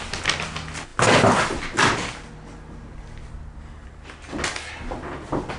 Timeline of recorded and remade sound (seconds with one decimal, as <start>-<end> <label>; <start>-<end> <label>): 0.0-5.6 recorded